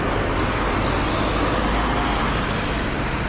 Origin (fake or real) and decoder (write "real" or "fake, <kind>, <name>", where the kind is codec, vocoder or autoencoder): real